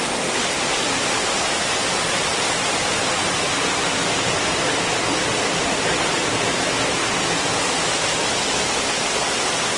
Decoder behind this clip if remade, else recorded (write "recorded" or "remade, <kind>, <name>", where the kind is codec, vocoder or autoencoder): recorded